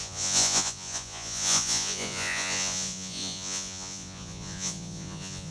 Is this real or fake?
fake